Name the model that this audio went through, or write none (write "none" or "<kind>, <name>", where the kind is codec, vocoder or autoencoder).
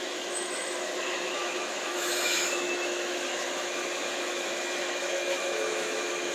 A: autoencoder, DAC-VAE